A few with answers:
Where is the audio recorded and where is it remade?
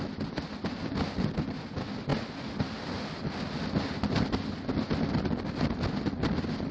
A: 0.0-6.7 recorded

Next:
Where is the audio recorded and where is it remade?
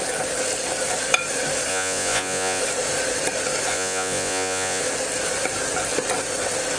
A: 0.0-1.7 recorded; 1.7-2.6 remade; 2.6-3.7 recorded; 3.7-4.8 remade; 4.8-6.8 recorded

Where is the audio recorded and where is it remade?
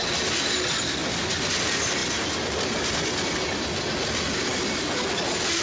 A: 0.0-5.6 recorded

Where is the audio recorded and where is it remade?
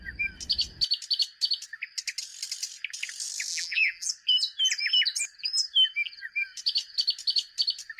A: 0.0-3.5 recorded; 3.5-4.1 remade; 4.1-8.0 recorded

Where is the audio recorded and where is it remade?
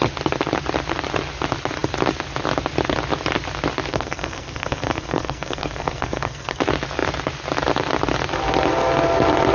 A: 0.0-3.9 recorded; 3.9-6.6 remade; 6.6-9.5 recorded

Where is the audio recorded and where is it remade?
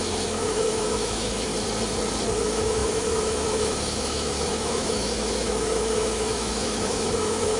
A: 0.0-1.5 remade; 1.5-2.4 recorded; 2.4-7.6 remade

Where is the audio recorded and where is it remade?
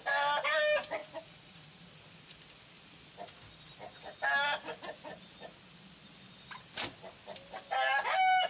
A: 0.0-1.0 recorded; 1.0-1.9 remade; 1.9-8.5 recorded